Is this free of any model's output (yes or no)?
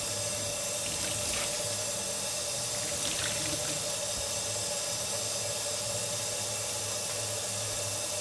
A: yes